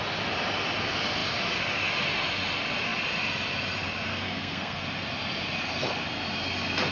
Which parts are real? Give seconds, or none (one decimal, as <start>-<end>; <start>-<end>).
0.0-4.1; 4.8-6.9